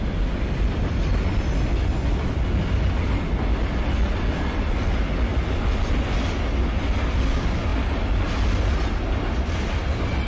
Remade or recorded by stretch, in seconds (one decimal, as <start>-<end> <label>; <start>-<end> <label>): 0.0-10.3 recorded